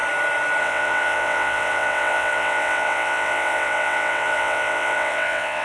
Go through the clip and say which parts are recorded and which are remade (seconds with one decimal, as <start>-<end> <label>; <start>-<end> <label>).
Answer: 0.0-0.6 recorded; 0.6-5.6 remade